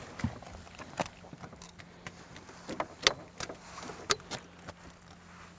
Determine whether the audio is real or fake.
real